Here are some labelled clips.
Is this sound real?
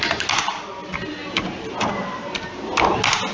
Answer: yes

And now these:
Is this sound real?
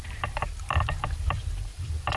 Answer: no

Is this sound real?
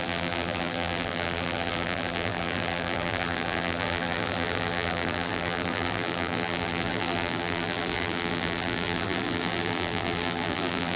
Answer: no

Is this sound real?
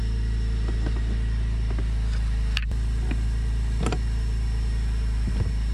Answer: yes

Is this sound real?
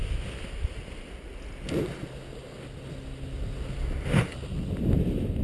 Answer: yes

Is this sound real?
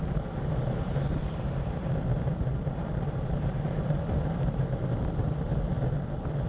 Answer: no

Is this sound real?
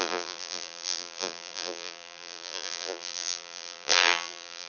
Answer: no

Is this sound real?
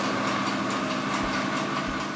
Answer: yes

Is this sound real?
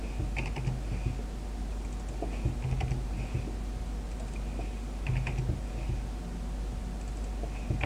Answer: yes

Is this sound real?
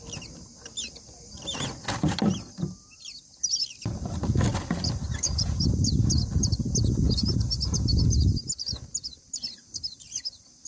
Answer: yes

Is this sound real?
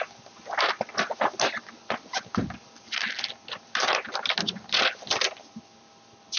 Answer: yes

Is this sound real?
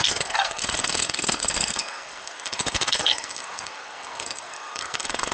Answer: no